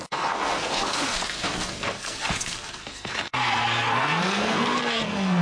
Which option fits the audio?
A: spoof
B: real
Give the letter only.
A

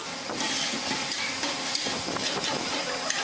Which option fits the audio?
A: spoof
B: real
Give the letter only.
B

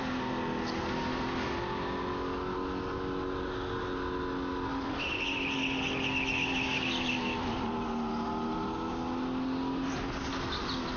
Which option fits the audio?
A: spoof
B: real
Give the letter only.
B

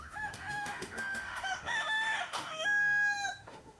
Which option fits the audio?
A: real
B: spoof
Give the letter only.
B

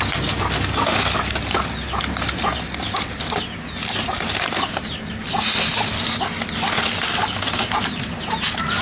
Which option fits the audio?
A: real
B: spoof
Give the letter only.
A